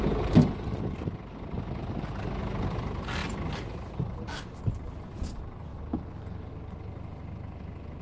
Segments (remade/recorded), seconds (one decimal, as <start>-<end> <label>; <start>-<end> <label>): 0.0-8.0 recorded

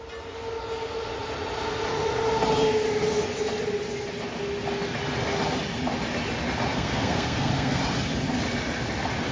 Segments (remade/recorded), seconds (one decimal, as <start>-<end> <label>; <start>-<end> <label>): 0.0-6.7 recorded; 6.7-7.8 remade; 7.8-9.3 recorded

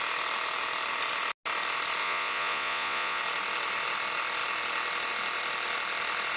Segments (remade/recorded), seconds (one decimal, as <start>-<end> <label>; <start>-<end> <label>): 0.0-2.0 recorded; 2.0-3.2 remade; 3.2-6.4 recorded

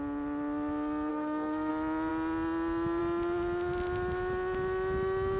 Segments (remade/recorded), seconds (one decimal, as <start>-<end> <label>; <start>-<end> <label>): 0.0-1.1 recorded; 1.1-1.7 remade; 1.7-5.4 recorded

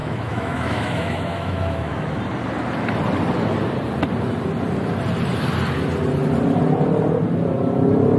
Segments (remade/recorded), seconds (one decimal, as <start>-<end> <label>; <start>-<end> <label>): 0.0-2.2 remade; 2.2-8.2 recorded

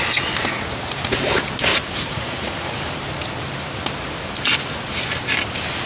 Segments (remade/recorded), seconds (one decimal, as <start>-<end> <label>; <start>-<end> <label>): 0.0-1.7 recorded; 1.7-2.7 remade; 2.7-5.9 recorded